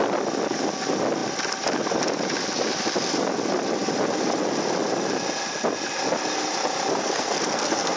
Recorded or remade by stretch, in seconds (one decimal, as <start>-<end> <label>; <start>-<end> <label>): 0.0-7.0 recorded; 7.0-8.0 remade